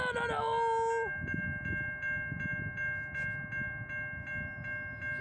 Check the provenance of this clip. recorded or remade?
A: recorded